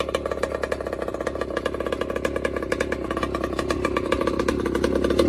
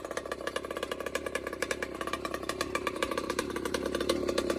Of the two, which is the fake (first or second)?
second